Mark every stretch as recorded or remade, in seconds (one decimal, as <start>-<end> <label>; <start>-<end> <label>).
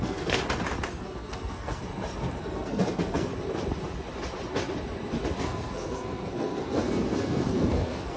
0.0-0.4 remade; 0.4-0.9 recorded; 0.9-1.8 remade; 1.8-2.4 recorded; 2.4-3.3 remade; 3.3-5.4 recorded; 5.4-8.2 remade